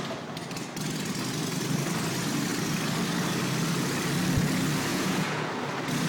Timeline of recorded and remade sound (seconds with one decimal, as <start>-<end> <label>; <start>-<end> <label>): 0.0-4.9 recorded; 4.9-5.5 remade; 5.5-6.1 recorded